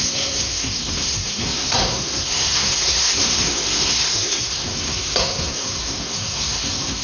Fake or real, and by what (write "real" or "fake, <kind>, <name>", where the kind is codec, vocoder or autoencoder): fake, codec, SNAC